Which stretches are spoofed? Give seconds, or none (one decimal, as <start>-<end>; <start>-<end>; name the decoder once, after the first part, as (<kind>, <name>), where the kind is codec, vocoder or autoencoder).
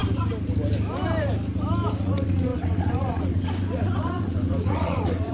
2.0-5.3 (vocoder, WaveNeXt)